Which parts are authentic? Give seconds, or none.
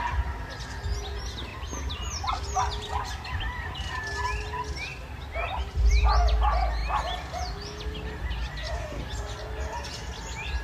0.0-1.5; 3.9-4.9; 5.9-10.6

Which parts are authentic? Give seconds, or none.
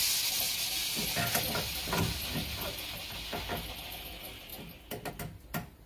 0.0-5.9